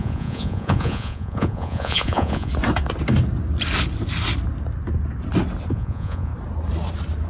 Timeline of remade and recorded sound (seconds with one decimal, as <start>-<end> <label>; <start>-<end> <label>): 0.0-2.5 remade; 2.5-5.7 recorded; 5.7-6.3 remade; 6.3-7.3 recorded